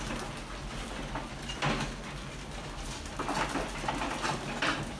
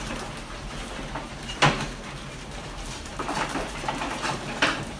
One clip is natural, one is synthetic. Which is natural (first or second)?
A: first